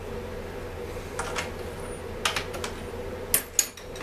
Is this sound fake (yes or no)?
no